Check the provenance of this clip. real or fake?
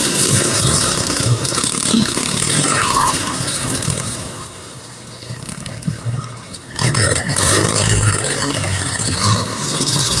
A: fake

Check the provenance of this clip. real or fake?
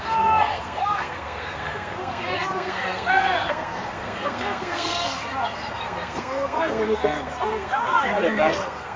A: fake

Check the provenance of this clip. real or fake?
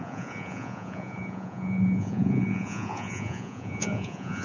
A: fake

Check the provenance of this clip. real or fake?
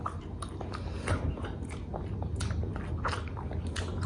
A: real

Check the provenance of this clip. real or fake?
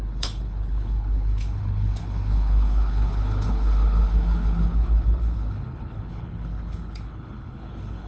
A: fake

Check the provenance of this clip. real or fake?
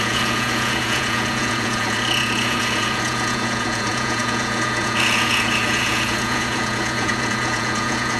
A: fake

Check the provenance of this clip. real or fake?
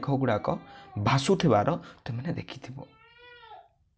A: real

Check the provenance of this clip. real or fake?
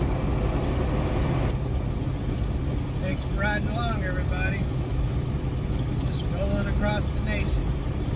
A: real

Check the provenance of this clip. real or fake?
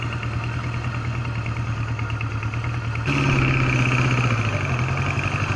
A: real